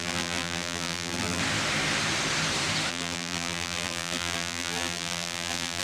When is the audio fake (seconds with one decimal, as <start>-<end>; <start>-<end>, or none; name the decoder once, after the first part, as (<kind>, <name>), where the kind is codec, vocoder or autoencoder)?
0.0-1.4 (vocoder, BigVGAN v2); 2.9-5.8